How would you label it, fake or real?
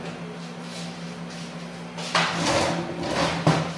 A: real